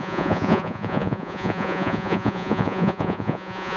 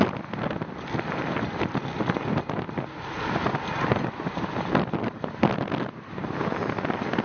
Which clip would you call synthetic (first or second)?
first